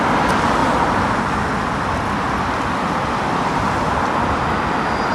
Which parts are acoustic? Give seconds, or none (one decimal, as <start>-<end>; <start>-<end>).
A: 0.0-5.1